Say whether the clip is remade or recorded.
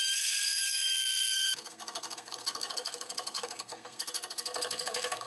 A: remade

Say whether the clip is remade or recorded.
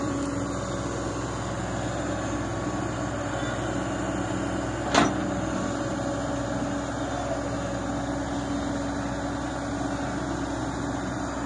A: recorded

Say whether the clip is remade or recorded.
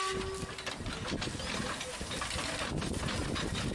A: recorded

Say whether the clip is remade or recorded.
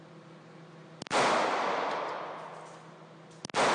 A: recorded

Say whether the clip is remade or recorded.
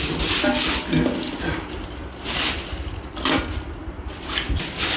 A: recorded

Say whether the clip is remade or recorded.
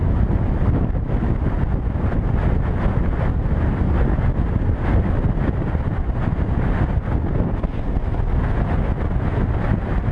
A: recorded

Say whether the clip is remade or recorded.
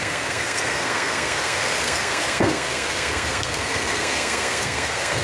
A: remade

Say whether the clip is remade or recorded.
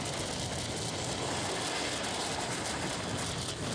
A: recorded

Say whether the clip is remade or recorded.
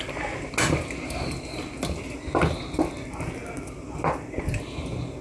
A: recorded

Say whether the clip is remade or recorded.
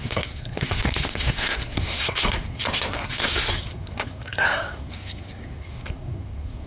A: remade